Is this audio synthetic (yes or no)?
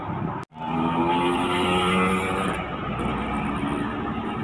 no